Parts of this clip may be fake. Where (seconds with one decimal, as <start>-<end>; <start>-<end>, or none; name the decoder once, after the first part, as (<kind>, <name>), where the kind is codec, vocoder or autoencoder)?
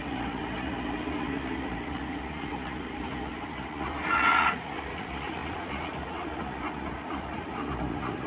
0.0-8.3 (vocoder, Vocos)